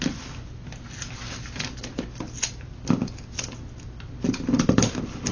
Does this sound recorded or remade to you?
recorded